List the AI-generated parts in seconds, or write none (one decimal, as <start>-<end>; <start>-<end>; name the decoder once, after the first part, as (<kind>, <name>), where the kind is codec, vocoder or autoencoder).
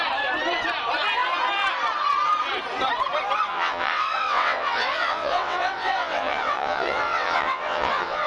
3.5-8.3 (vocoder, WaveNeXt)